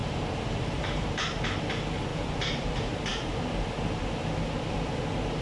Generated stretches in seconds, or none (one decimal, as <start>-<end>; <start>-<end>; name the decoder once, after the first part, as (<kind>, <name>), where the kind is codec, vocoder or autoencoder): 0.0-1.2 (vocoder, BigVGAN v2); 2.1-2.7